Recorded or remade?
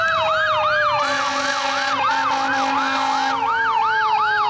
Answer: recorded